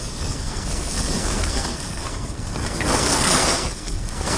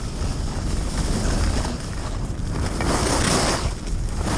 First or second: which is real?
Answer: second